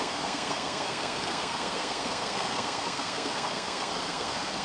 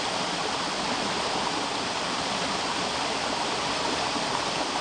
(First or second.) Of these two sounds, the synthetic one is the first